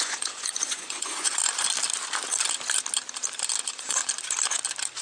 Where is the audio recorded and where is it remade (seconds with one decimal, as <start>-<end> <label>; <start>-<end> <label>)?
0.0-1.4 remade; 1.4-3.6 recorded; 3.6-4.0 remade; 4.0-5.0 recorded